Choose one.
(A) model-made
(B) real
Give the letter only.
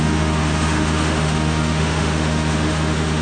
A